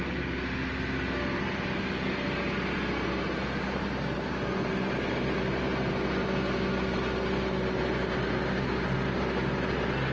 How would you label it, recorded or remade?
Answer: recorded